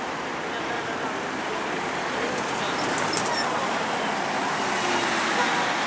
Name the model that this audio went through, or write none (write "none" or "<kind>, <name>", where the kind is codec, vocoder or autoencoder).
none